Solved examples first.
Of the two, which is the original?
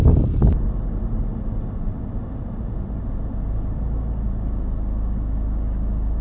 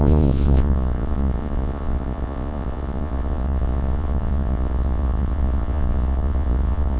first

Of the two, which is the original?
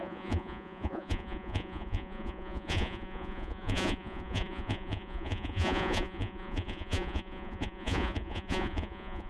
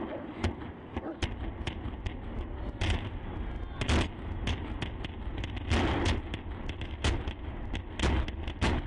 second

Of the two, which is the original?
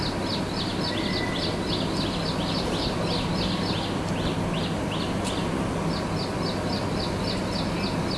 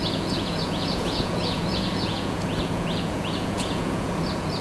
first